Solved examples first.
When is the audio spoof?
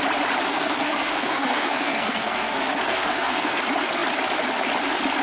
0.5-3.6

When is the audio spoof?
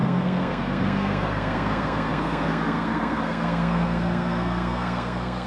0.0-5.5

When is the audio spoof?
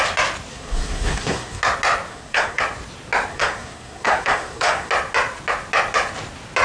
0.5-1.6; 2.1-2.6; 3.3-4.9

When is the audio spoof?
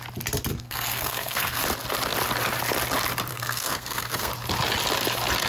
0.5-1.6; 3.3-4.3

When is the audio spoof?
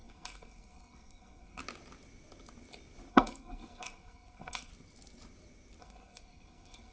0.0-1.6; 3.1-4.7; 5.8-6.9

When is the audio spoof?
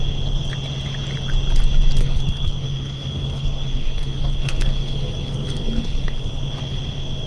2.0-6.4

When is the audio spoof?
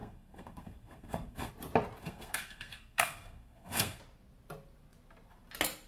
0.0-1.5; 2.0-4.0